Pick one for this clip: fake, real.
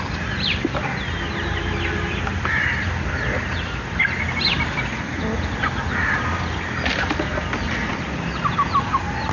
real